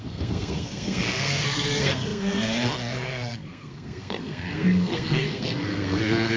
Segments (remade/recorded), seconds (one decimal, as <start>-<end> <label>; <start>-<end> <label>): 0.0-6.4 remade